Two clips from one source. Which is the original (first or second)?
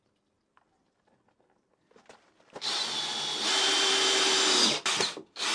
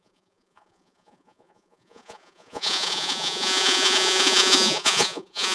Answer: first